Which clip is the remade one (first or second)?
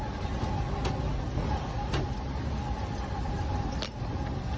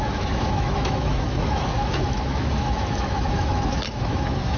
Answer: second